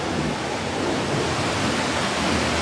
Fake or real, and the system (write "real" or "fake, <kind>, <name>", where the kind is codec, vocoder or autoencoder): real